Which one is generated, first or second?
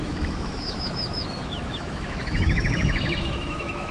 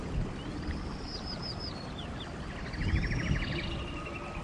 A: first